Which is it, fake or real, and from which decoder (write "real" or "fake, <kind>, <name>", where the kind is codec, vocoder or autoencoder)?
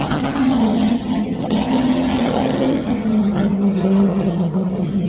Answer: fake, vocoder, HiFi-GAN